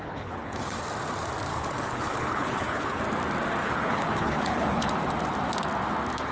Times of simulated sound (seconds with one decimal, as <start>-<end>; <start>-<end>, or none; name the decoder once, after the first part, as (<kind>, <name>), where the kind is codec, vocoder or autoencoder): 0.0-0.8 (codec, HILCodec); 1.5-3.0; 3.6-4.9